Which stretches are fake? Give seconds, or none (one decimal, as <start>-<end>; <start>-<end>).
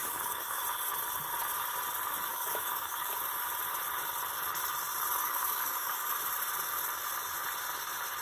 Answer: 0.0-0.6; 2.3-3.1; 5.2-6.1